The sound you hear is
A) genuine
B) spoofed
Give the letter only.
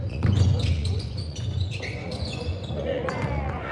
B